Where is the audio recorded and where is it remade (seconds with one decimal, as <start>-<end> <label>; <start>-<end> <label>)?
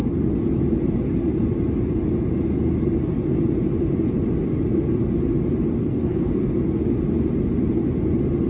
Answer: 0.0-5.8 recorded; 5.8-6.3 remade; 6.3-8.5 recorded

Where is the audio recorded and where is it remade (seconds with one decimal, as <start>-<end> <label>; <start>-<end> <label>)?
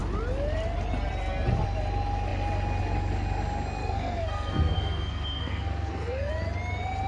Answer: 0.0-3.8 recorded; 3.8-6.3 remade; 6.3-7.1 recorded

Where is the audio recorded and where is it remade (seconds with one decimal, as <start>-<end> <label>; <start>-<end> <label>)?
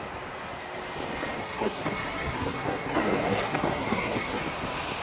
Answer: 0.0-1.4 recorded; 1.4-4.4 remade; 4.4-5.0 recorded